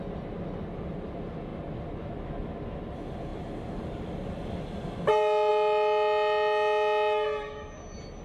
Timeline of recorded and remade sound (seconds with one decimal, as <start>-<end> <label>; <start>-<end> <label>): 0.0-8.2 recorded